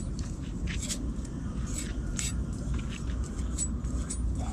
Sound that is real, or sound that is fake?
real